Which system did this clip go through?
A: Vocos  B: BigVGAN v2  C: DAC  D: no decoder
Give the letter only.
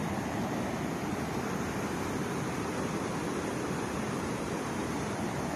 B